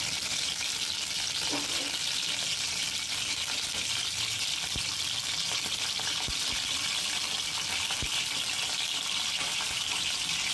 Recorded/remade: recorded